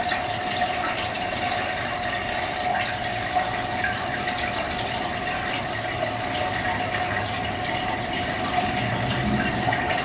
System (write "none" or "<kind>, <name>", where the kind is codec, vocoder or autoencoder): none